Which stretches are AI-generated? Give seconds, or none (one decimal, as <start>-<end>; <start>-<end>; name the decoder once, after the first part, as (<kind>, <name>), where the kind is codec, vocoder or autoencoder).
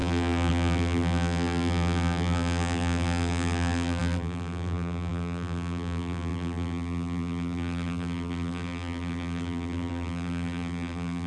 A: 0.0-11.3 (vocoder, BigVGAN v2)